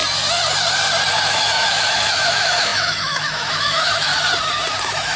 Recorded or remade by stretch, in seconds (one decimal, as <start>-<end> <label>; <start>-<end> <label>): 0.0-1.3 recorded; 1.3-4.1 remade; 4.1-4.8 recorded; 4.8-5.2 remade